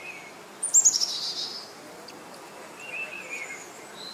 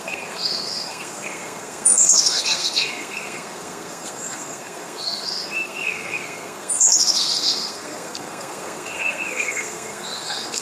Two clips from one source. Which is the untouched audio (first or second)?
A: first